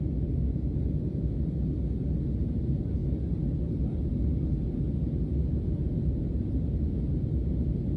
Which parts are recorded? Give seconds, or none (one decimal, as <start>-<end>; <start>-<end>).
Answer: 0.0-8.0